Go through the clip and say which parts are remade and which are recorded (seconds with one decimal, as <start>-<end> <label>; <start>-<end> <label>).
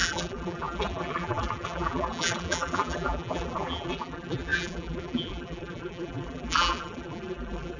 0.0-7.8 remade